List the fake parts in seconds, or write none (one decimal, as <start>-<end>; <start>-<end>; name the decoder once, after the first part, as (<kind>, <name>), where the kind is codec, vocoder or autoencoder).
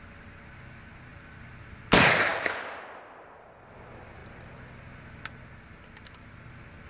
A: 1.1-1.8 (vocoder, BigVGAN v2); 2.3-3.8